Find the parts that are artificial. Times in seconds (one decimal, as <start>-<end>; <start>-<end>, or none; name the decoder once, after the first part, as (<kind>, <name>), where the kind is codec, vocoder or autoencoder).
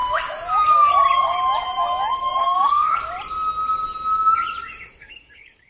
0.0-0.9 (codec, DAC); 2.4-3.1; 4.6-5.7